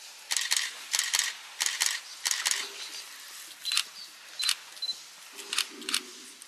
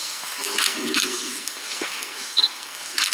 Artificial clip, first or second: second